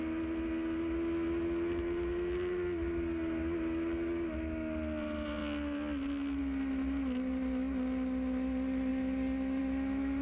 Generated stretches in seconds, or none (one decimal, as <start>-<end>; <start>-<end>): none